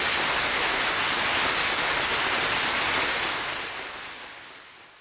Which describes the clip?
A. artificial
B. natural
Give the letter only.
B